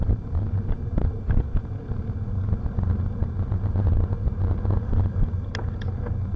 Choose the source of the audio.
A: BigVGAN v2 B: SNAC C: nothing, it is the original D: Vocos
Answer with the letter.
C